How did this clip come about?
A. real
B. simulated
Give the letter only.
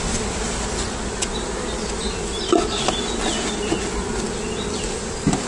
A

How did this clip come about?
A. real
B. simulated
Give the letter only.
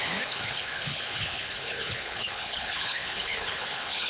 B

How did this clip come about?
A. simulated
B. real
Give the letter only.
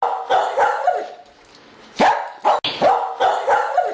B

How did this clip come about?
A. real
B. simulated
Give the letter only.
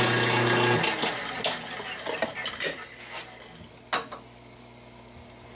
A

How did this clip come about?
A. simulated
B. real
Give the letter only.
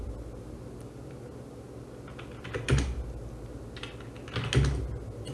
B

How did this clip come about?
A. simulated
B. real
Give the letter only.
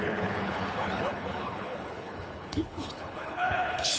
A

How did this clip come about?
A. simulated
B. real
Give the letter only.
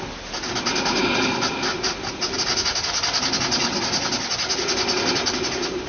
B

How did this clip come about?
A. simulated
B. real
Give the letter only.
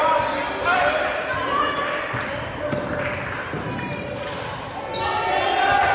B